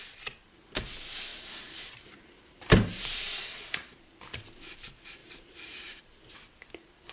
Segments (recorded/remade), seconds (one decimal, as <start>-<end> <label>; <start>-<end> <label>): 0.0-1.3 recorded; 1.3-4.0 remade; 4.0-5.2 recorded; 5.2-6.0 remade; 6.0-7.1 recorded

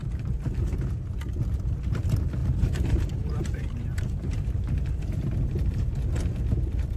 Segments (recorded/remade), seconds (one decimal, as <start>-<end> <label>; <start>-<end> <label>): 0.0-1.0 remade; 1.0-2.4 recorded; 2.4-6.0 remade; 6.0-7.0 recorded

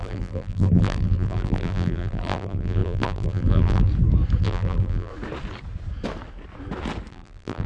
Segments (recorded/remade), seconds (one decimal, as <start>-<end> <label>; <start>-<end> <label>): 0.0-3.9 remade; 3.9-4.4 recorded; 4.4-5.1 remade; 5.1-7.1 recorded; 7.1-7.7 remade

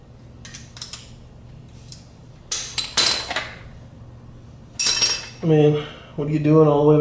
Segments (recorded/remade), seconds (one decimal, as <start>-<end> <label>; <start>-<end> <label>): 0.0-7.0 recorded

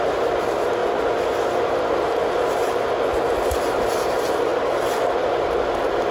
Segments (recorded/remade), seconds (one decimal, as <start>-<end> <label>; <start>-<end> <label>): 0.0-0.8 remade; 0.8-2.3 recorded; 2.3-4.5 remade; 4.5-6.1 recorded

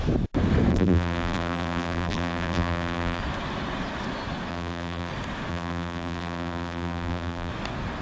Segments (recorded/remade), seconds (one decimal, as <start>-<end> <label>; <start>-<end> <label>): 0.0-0.7 recorded; 0.7-3.2 remade; 3.2-4.5 recorded; 4.5-5.1 remade; 5.1-5.5 recorded; 5.5-7.5 remade; 7.5-8.0 recorded

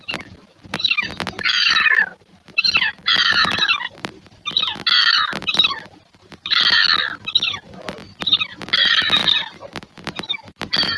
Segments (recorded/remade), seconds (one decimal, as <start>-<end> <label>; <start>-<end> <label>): 0.0-6.8 remade; 6.8-7.5 recorded; 7.5-11.0 remade

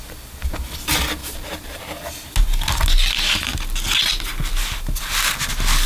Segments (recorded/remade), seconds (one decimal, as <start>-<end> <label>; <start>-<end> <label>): 0.0-1.2 recorded; 1.2-1.8 remade; 1.8-5.9 recorded